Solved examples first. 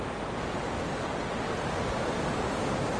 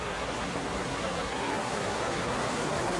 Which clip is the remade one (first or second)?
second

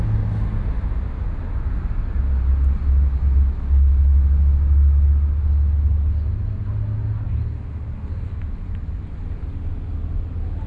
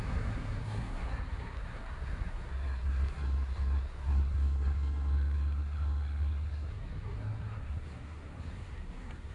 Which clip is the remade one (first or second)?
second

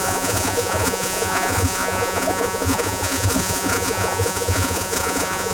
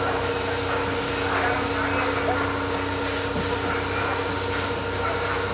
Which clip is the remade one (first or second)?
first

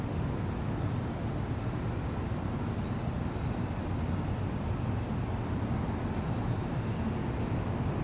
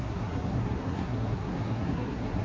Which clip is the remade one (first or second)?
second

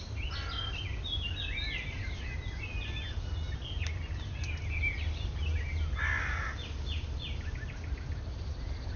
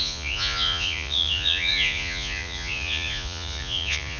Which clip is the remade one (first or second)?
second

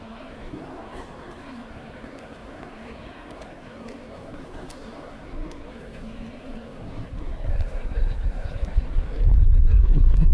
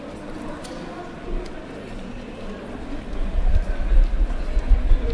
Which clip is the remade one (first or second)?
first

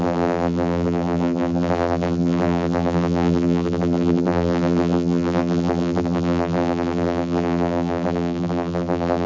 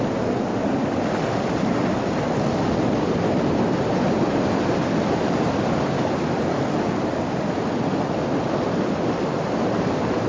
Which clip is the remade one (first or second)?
first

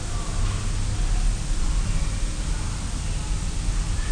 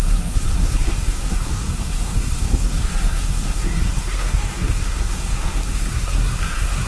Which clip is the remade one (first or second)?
second